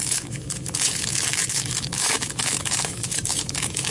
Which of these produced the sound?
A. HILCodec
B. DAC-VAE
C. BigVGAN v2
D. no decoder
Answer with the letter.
B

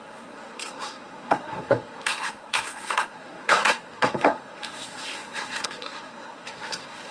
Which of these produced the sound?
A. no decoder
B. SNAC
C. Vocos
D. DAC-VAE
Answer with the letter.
B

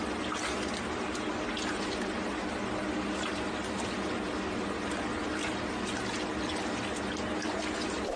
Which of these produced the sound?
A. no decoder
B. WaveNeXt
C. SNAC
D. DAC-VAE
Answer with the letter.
A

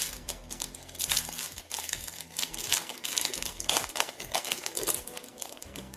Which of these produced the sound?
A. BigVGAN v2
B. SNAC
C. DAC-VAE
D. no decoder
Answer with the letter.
B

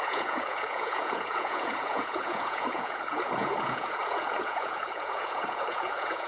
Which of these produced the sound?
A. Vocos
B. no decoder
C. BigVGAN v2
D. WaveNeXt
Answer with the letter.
A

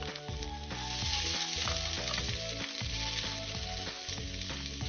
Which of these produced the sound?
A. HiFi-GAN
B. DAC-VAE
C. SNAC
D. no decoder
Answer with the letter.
D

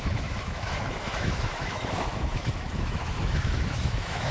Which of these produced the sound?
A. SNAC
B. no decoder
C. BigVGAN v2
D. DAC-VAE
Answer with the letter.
D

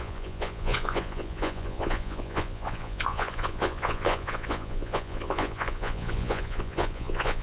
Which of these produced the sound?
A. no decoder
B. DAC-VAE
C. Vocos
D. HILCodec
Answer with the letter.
C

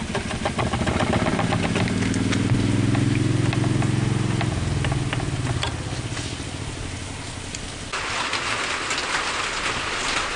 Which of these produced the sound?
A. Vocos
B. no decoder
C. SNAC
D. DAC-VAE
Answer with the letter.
B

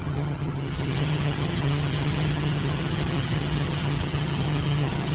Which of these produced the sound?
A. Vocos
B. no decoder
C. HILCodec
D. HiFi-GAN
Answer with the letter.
D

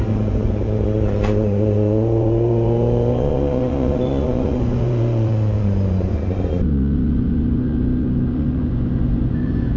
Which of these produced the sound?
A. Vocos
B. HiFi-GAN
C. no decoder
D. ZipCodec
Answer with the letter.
A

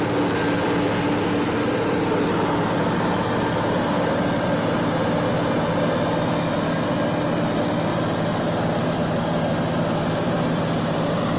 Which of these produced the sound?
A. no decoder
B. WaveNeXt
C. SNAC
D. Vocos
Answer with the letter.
A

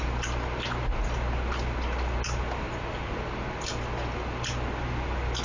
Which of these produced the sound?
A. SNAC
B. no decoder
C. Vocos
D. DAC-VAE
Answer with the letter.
B